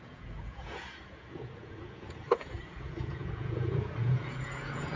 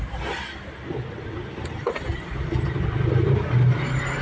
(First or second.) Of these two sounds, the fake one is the first